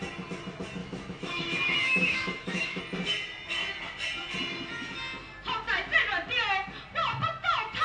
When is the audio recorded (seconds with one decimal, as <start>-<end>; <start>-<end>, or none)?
0.0-0.8; 2.8-7.8